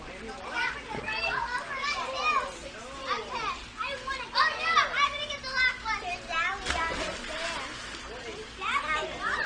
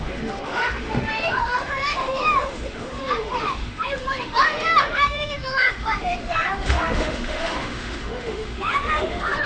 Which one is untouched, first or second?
first